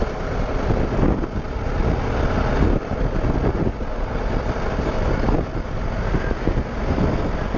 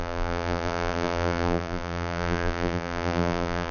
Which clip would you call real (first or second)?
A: first